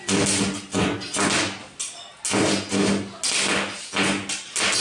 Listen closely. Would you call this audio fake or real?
real